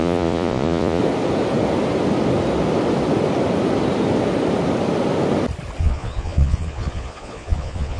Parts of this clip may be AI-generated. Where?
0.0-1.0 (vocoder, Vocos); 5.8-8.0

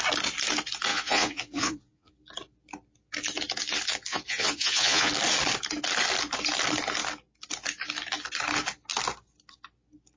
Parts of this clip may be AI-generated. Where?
0.9-2.1 (vocoder, Vocos); 4.1-5.1

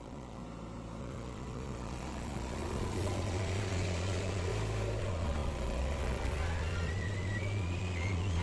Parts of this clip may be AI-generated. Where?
0.0-0.4 (vocoder, Vocos); 1.0-4.5; 5.0-8.4

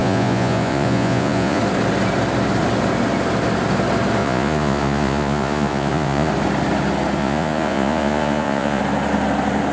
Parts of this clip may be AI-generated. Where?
0.0-1.6 (vocoder, Vocos); 4.2-6.3; 7.2-8.8

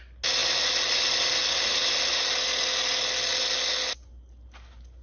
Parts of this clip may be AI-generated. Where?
none

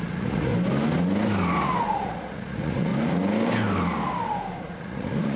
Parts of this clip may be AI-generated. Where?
0.0-0.5 (vocoder, Vocos); 1.8-2.9; 4.6-5.4

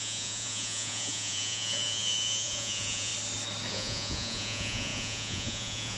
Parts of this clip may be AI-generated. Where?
0.0-3.1 (vocoder, Vocos); 3.7-6.0